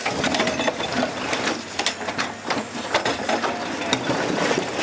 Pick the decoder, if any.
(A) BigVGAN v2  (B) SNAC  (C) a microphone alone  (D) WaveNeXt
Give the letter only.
C